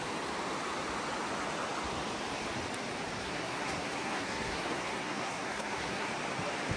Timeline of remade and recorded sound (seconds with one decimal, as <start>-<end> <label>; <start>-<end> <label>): 0.0-3.2 recorded; 3.2-6.1 remade; 6.1-6.8 recorded